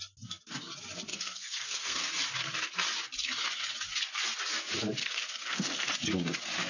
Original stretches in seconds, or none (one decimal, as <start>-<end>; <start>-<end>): 0.0-1.1; 2.1-5.0; 5.9-6.7